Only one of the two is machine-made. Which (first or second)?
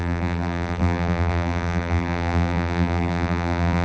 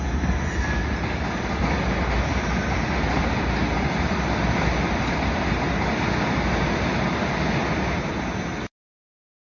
first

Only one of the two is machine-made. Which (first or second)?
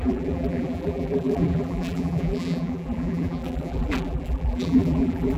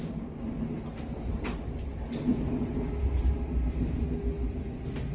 first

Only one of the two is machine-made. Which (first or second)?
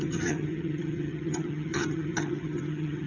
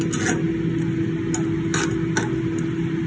first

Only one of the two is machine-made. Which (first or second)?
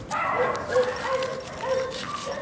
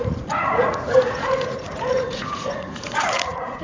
second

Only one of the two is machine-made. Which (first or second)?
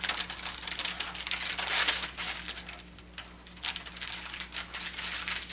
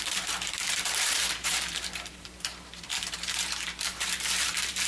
second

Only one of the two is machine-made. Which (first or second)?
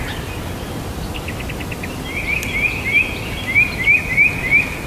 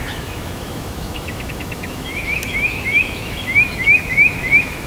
second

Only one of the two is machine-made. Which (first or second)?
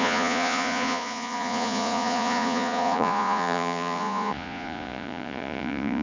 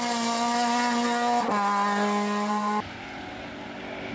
first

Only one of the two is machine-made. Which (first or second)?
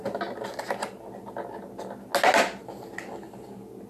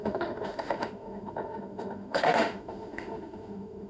second